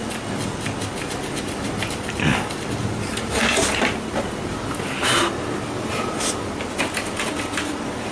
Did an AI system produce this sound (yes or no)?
no